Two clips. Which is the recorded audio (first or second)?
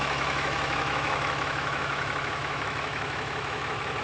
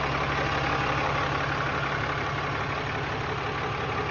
second